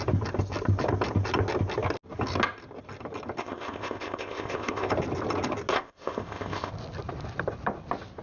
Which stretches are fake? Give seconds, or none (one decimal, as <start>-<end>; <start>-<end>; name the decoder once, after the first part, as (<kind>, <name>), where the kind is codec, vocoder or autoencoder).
3.4-4.9 (codec, ZipCodec); 5.7-6.7